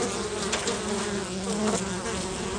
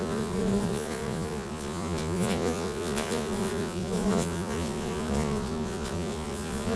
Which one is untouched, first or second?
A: first